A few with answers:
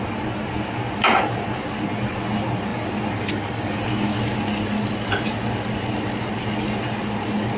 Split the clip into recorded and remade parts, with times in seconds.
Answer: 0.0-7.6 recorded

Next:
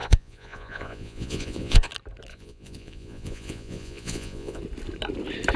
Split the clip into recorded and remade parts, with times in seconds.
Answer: 0.0-1.9 remade; 1.9-2.3 recorded; 2.3-4.6 remade; 4.6-5.6 recorded